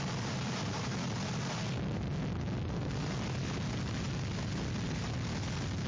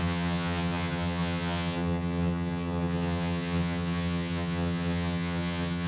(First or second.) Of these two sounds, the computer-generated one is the second